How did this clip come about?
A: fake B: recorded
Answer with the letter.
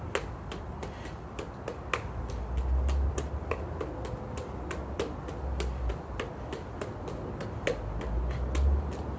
B